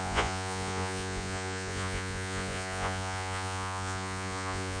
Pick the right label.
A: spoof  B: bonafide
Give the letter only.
A